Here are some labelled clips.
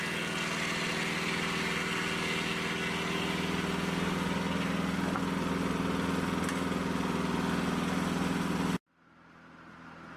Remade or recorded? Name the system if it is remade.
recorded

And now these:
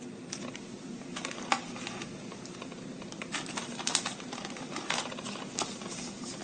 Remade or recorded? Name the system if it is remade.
recorded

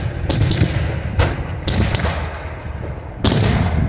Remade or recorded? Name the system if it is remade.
recorded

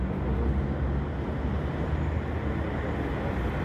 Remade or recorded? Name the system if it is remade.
recorded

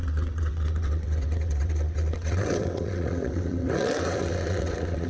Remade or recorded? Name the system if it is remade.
remade, vocoder, WaveNeXt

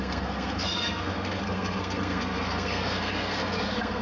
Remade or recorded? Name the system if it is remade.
remade, codec, SNAC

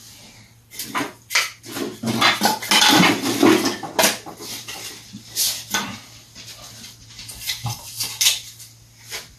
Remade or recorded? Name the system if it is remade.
recorded